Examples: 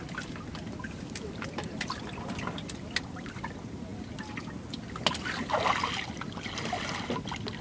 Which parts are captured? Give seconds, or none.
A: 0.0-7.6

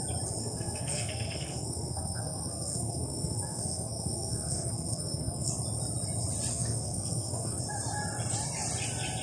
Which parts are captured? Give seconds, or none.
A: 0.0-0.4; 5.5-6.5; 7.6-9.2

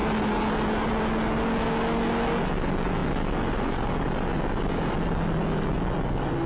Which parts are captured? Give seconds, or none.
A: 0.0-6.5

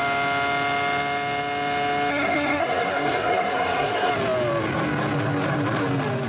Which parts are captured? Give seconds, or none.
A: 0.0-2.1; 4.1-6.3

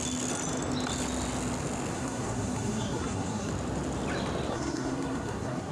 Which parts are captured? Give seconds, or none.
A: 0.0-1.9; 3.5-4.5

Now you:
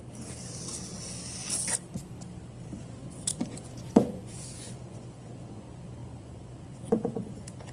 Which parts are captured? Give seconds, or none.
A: 0.0-2.8

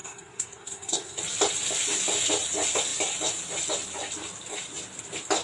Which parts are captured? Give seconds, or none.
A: 1.2-5.4